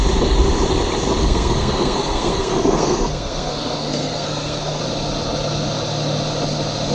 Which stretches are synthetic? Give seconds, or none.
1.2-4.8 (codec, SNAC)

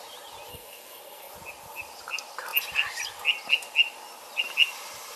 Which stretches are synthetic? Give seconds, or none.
0.5-1.3 (codec, SNAC)